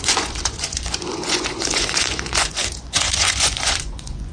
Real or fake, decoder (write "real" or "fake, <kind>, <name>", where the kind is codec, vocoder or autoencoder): fake, vocoder, Vocos